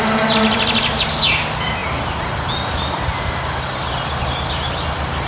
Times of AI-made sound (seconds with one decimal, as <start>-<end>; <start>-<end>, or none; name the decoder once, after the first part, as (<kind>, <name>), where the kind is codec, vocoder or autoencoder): none